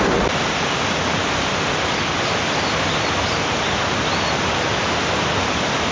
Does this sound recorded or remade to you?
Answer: recorded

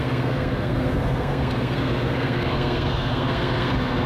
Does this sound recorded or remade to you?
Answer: remade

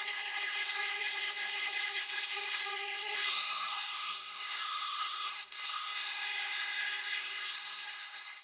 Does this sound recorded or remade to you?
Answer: remade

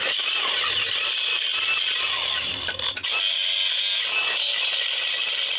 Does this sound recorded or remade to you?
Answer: recorded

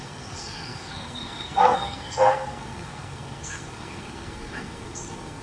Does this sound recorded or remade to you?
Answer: remade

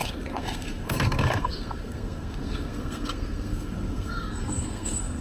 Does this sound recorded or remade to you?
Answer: remade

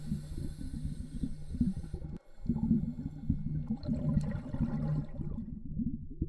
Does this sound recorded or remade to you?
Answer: recorded